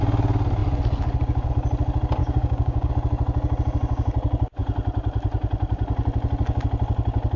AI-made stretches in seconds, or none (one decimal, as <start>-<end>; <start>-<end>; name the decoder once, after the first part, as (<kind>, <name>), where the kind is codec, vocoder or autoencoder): 2.2-2.9 (codec, DAC)